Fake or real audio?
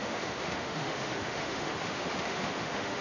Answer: fake